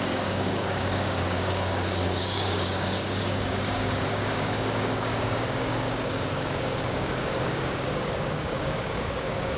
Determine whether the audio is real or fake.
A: fake